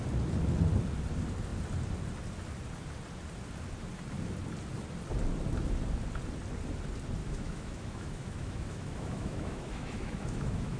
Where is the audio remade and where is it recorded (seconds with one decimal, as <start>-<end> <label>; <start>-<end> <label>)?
0.0-7.2 recorded; 7.2-10.8 remade